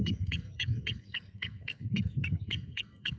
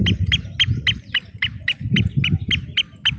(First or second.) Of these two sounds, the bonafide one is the second